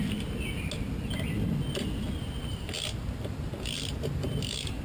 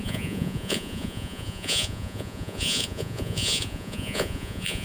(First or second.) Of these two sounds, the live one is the first